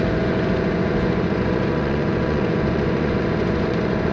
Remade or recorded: remade